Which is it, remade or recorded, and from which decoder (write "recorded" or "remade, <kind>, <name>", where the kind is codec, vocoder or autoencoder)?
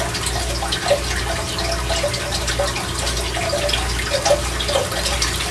recorded